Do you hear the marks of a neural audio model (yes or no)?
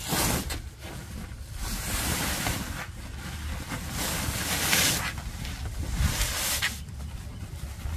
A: no